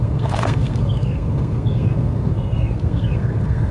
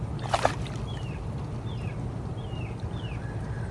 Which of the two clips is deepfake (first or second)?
first